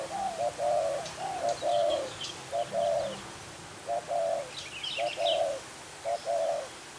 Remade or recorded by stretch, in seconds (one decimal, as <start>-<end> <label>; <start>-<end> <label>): 0.0-1.7 recorded; 1.7-2.5 remade; 2.5-7.0 recorded